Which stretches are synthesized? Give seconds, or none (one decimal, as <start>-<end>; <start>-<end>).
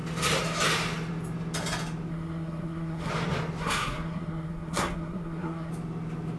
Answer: 2.1-3.1; 3.6-5.7